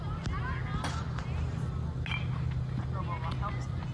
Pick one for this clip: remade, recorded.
recorded